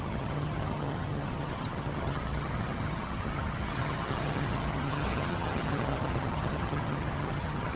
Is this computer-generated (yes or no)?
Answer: yes